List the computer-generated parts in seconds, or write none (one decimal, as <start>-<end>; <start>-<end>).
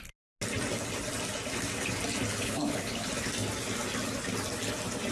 2.3-3.1